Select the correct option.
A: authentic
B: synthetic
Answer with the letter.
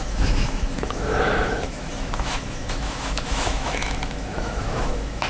B